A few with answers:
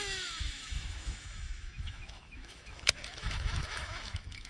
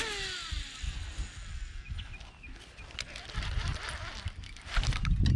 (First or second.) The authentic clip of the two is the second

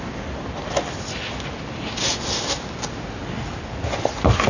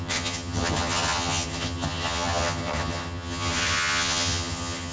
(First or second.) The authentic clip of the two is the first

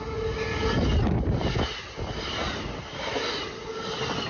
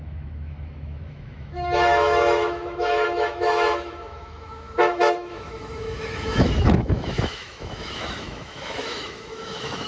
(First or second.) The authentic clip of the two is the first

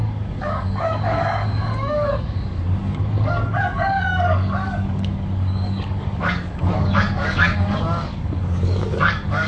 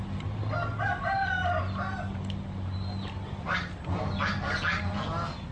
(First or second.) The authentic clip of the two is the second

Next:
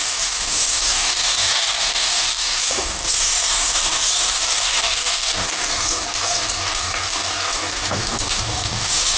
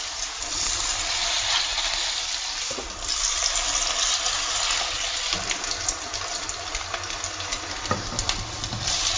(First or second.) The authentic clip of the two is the second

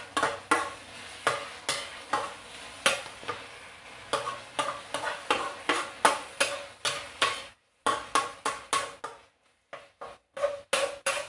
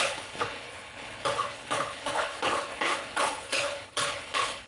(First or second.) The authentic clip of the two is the first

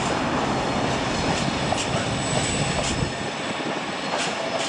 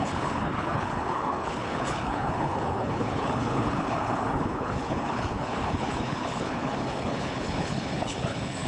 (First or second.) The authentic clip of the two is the first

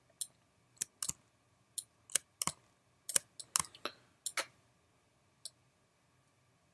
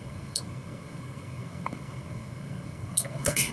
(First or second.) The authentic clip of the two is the first